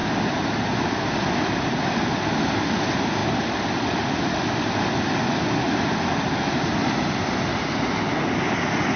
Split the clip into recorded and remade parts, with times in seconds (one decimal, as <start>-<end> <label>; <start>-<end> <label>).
0.0-9.0 recorded